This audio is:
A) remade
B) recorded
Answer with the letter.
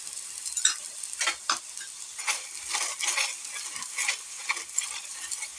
B